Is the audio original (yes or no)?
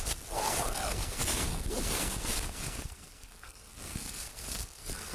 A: no